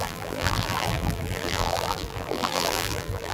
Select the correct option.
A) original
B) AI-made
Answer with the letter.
B